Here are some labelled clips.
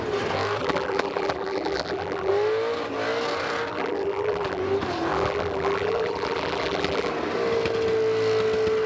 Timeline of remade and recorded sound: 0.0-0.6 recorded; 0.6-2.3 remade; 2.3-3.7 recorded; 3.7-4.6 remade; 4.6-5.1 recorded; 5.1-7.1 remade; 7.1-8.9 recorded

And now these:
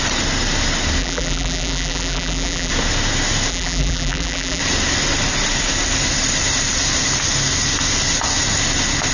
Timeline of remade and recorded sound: 0.0-1.0 recorded; 1.0-2.7 remade; 2.7-3.5 recorded; 3.5-4.6 remade; 4.6-9.1 recorded

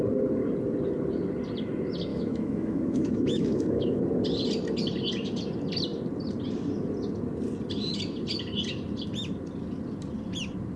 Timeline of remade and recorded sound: 0.0-2.1 recorded; 2.1-4.0 remade; 4.0-10.8 recorded